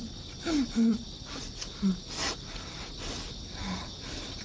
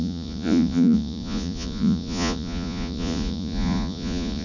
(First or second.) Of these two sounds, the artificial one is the second